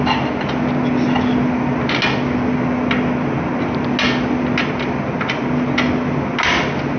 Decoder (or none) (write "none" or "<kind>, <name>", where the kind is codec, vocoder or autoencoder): none